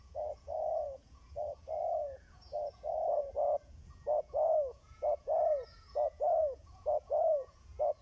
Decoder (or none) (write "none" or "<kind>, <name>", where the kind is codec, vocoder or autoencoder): vocoder, Vocos